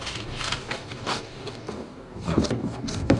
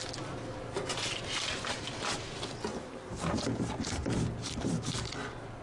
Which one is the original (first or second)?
second